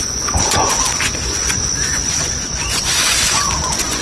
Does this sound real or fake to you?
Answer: fake